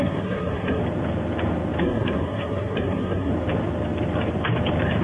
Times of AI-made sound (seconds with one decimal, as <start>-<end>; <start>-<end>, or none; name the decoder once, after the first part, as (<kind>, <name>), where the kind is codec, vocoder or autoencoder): 0.0-0.8 (codec, SNAC); 1.8-3.3